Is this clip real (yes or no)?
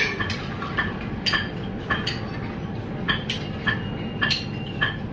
yes